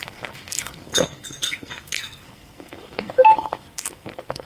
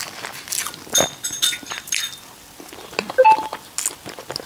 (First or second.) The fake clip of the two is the first